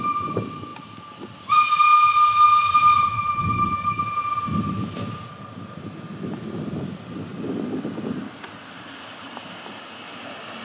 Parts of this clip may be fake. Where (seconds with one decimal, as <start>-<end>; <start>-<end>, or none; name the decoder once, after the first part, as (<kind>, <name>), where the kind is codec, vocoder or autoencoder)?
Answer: 3.4-4.0 (codec, DAC)